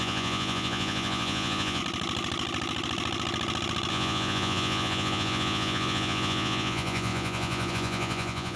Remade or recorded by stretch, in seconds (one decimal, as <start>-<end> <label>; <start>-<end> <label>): 0.0-1.8 remade; 1.8-3.9 recorded; 3.9-8.6 remade